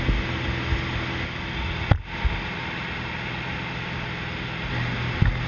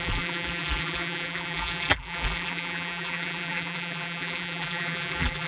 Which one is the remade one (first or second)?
second